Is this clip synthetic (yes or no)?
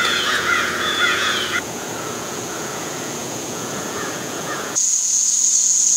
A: yes